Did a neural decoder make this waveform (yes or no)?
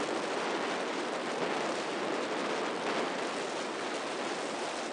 no